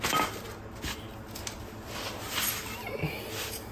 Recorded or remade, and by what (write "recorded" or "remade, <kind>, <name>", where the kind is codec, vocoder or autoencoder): recorded